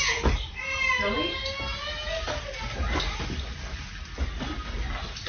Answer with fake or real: real